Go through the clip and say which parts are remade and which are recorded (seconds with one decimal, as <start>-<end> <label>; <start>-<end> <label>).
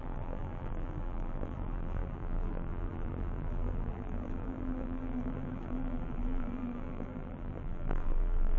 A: 0.0-8.6 remade